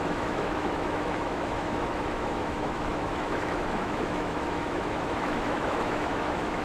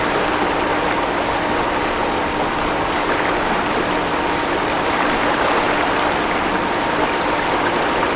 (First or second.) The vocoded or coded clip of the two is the first